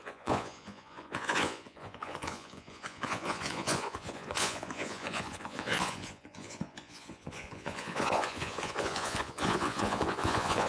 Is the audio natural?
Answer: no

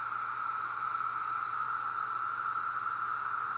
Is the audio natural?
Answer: yes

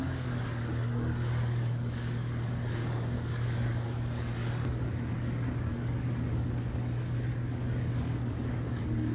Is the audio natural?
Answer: no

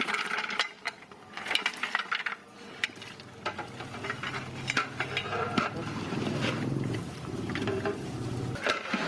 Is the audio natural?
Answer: no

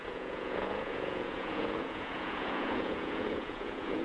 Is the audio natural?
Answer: no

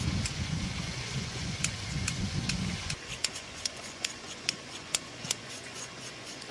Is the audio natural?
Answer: no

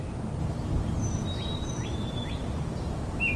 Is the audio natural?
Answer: yes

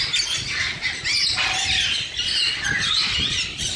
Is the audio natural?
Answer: yes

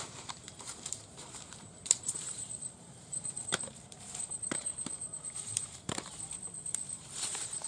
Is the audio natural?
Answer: no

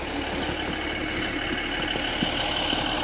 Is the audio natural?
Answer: yes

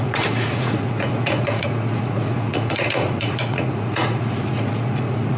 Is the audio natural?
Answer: no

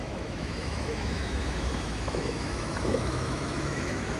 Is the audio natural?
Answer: no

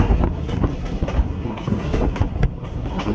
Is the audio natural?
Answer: no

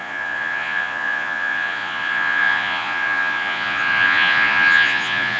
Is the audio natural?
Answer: no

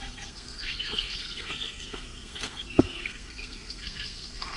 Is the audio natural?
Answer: no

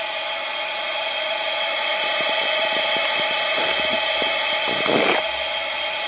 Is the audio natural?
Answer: yes